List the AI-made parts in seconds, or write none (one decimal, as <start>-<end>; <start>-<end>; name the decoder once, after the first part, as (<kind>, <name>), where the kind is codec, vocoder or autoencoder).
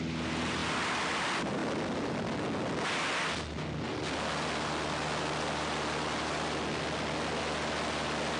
none